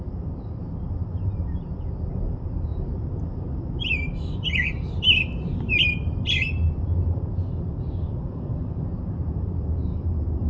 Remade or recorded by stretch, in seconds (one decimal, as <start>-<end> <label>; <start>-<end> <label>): 0.0-2.7 recorded; 2.7-6.3 remade; 6.3-10.5 recorded